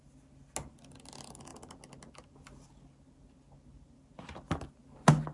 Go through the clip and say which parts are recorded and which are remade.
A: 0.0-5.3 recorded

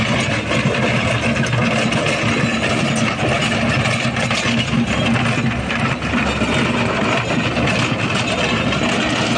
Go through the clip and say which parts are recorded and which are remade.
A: 0.0-9.4 recorded

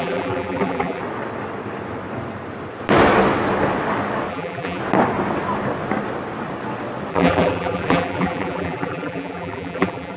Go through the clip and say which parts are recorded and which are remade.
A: 0.0-1.0 remade; 1.0-4.3 recorded; 4.3-4.8 remade; 4.8-7.1 recorded; 7.1-10.2 remade

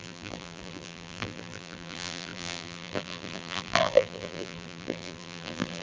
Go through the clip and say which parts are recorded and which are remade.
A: 0.0-5.8 remade

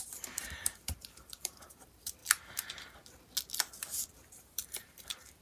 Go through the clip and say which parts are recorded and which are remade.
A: 0.0-2.2 remade; 2.2-4.3 recorded; 4.3-5.4 remade

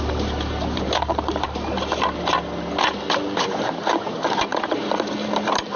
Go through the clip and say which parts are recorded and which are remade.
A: 0.0-1.7 remade; 1.7-3.4 recorded; 3.4-5.8 remade

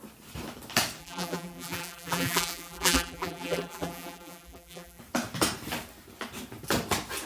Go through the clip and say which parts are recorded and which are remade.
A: 0.0-1.0 recorded; 1.0-5.0 remade; 5.0-7.3 recorded

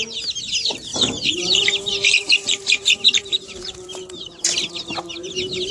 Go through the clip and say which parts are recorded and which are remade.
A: 0.0-0.9 recorded; 0.9-4.3 remade; 4.3-5.7 recorded